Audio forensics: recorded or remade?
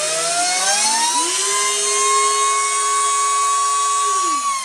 recorded